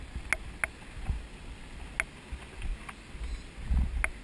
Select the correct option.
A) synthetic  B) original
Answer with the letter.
B